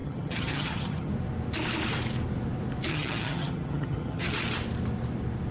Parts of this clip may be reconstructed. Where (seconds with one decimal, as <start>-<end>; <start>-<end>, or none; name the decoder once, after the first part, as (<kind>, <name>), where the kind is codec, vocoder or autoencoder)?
0.0-1.1 (vocoder, HiFi-GAN); 2.9-4.3

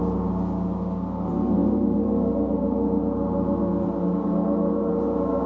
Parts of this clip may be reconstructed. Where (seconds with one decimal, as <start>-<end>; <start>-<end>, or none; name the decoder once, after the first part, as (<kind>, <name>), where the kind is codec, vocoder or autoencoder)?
none

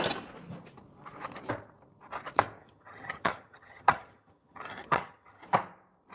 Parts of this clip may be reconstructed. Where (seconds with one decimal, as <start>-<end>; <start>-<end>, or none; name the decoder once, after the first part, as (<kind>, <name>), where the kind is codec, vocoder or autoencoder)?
2.6-5.4 (vocoder, HiFi-GAN)

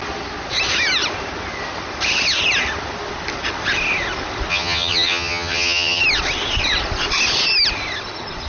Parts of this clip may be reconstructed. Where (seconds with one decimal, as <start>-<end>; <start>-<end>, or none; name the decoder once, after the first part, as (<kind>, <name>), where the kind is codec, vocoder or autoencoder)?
4.5-6.0 (vocoder, HiFi-GAN)

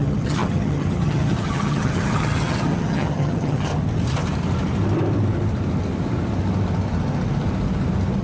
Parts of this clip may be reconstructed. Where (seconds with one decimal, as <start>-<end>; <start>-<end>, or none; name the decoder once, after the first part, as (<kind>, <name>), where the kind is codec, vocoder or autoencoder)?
0.0-3.7 (vocoder, HiFi-GAN)